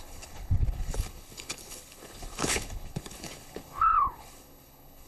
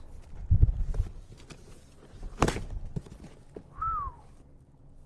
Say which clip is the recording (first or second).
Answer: second